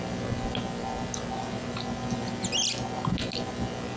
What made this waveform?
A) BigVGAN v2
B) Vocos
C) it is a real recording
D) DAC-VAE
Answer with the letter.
C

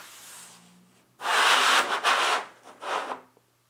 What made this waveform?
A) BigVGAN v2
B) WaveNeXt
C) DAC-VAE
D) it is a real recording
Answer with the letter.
D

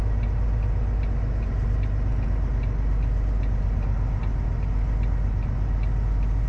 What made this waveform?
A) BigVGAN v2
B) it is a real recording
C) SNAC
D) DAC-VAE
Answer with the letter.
B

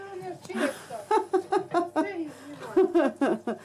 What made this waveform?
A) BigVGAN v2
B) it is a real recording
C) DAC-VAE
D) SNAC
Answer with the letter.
B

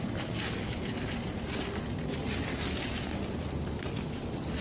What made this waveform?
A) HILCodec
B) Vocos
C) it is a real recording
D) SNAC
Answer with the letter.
C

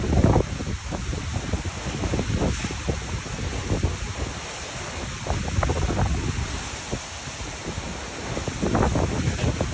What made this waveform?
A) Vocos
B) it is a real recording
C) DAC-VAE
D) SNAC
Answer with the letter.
B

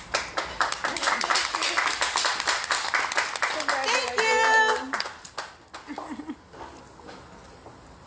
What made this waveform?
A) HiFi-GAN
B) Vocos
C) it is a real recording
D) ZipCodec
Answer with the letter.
C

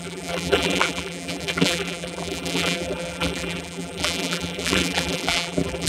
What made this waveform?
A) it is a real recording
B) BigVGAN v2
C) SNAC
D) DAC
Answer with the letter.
B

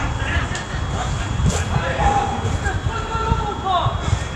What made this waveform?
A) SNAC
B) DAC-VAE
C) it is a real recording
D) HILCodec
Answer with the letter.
C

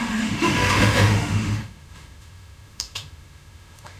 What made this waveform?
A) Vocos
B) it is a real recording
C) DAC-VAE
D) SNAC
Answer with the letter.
C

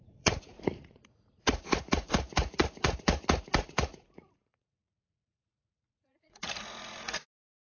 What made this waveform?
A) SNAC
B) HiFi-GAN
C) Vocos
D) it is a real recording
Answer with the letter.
C